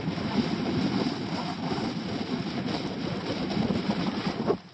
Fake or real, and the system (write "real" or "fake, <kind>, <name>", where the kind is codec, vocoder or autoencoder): real